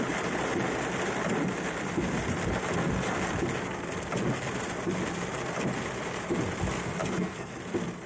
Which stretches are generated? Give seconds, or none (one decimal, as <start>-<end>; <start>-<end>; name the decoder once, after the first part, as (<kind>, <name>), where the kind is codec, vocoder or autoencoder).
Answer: 7.0-7.6 (codec, SNAC)

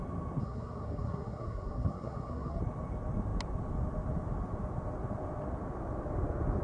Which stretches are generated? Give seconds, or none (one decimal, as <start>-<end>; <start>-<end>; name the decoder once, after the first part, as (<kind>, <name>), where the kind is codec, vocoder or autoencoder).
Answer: 0.4-2.6 (codec, SNAC)

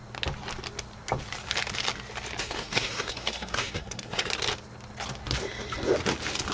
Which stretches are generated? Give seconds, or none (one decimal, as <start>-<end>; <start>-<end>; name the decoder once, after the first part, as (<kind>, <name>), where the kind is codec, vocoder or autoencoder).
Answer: 2.4-4.3 (codec, SNAC)

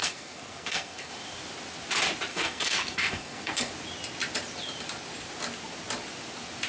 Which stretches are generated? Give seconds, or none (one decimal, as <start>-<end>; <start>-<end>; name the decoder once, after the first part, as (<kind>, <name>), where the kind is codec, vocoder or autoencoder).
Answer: 0.0-1.1 (codec, SNAC); 2.3-3.7

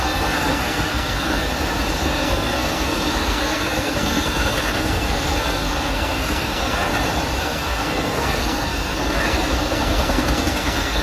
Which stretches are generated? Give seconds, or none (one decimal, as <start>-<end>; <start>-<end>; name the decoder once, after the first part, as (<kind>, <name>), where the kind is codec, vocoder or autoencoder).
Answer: 0.0-1.5 (codec, SNAC); 2.0-6.9; 7.4-11.0

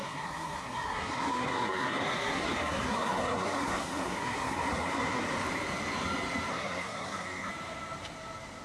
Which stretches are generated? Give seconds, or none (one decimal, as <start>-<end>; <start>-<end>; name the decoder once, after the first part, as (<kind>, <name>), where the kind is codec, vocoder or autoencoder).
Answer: 0.0-5.2 (codec, SNAC); 6.5-7.5

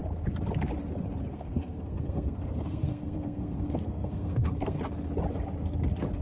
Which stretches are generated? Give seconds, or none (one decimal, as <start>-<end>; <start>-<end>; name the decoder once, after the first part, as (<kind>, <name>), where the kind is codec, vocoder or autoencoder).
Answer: 1.3-4.8 (codec, SNAC)